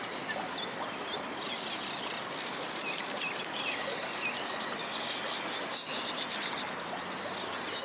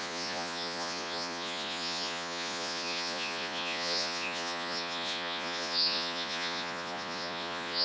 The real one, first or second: first